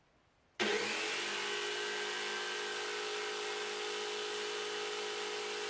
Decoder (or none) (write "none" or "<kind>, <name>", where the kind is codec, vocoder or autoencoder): none